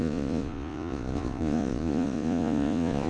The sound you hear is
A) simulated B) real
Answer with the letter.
A